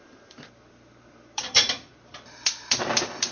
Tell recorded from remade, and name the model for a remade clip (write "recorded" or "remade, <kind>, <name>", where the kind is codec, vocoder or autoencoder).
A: remade, vocoder, BigVGAN v2